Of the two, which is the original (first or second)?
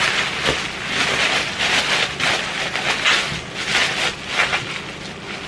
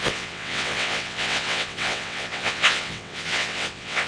first